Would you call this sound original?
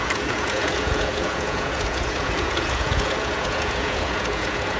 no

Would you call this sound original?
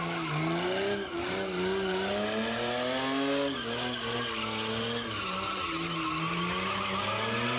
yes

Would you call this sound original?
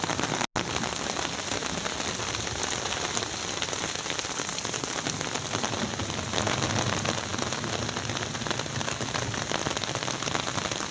yes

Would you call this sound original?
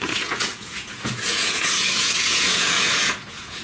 no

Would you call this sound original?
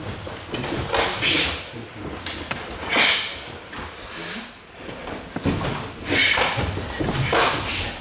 yes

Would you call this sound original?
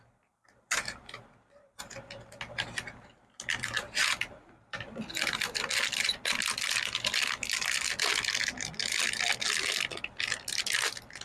yes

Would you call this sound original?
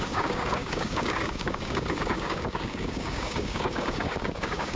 no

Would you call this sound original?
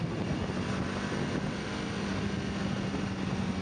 yes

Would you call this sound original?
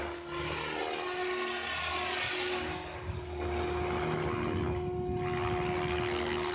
yes